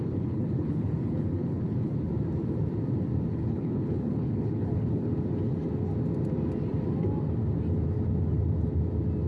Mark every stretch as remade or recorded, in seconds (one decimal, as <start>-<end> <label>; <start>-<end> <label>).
0.0-2.1 remade; 2.1-3.3 recorded; 3.3-5.1 remade; 5.1-9.3 recorded

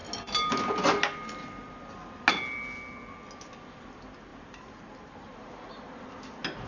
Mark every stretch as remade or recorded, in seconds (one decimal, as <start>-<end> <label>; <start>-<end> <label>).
0.0-4.3 recorded; 4.3-6.1 remade; 6.1-6.7 recorded

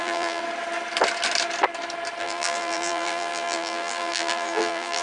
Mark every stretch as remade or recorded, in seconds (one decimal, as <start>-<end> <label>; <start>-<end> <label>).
0.0-0.4 remade; 0.4-2.2 recorded; 2.2-5.0 remade